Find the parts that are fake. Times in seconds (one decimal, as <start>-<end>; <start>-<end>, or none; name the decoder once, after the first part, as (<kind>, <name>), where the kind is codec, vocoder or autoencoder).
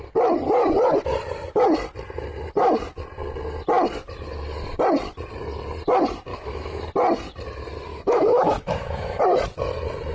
6.3-6.8 (autoencoder, DAC-VAE); 7.9-9.2